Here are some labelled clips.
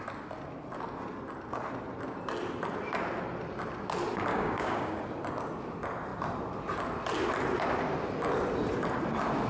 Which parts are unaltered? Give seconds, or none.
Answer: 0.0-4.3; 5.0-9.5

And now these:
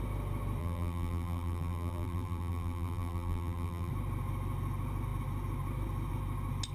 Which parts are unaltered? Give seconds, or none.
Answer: 0.0-0.6; 3.9-6.7

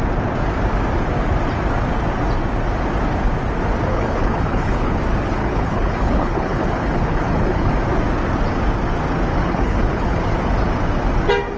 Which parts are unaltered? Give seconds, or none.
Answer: 0.0-3.9; 5.0-5.4; 7.7-9.3; 10.2-11.6

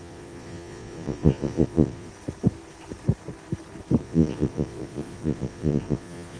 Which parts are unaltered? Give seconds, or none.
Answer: 2.1-4.0